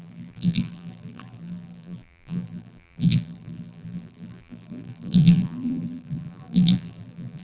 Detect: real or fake fake